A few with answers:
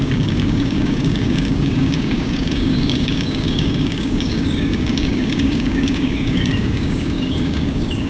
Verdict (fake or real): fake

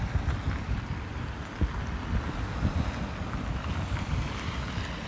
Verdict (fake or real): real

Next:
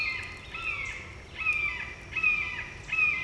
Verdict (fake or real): real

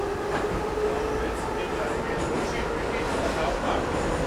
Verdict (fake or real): real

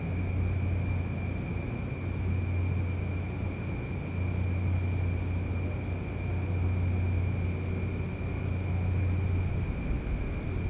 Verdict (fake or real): real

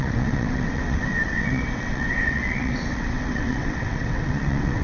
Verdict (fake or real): fake